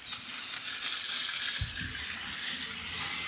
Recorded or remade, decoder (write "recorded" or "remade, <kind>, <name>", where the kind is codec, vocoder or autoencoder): recorded